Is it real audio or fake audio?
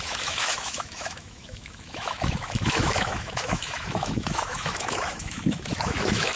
fake